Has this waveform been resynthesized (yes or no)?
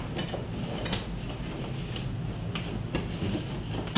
no